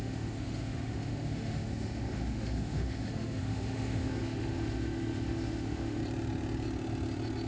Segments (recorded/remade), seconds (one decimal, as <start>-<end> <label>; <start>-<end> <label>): 0.0-6.0 remade; 6.0-7.5 recorded